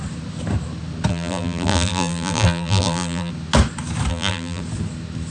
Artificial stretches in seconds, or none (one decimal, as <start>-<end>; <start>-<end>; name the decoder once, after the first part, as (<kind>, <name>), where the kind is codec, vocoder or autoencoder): 1.1-3.3 (vocoder, BigVGAN v2); 4.1-4.6